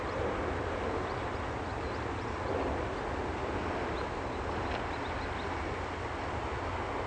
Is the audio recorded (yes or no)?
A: yes